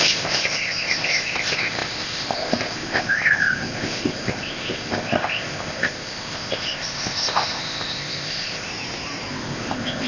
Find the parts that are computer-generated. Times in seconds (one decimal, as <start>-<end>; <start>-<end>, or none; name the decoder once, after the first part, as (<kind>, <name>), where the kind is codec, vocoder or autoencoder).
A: 0.0-8.7 (codec, ZipCodec); 9.3-10.1